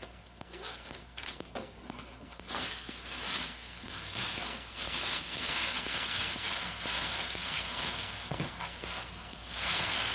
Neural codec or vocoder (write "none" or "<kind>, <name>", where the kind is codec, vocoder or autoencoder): codec, SNAC